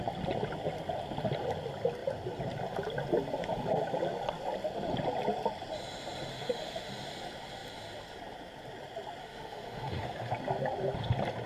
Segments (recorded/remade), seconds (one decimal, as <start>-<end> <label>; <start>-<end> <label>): 0.0-6.3 recorded; 6.3-6.9 remade; 6.9-9.2 recorded; 9.2-10.3 remade; 10.3-11.5 recorded